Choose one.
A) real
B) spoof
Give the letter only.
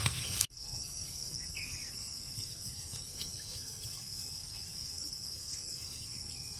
B